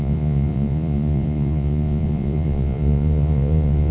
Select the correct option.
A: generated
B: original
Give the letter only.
A